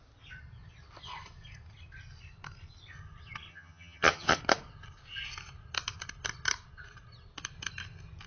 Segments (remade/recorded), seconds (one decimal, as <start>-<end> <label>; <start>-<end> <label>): 0.0-3.5 recorded; 3.5-4.4 remade; 4.4-8.3 recorded